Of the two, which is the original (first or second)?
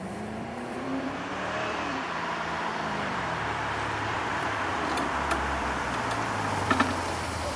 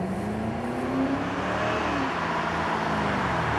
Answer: second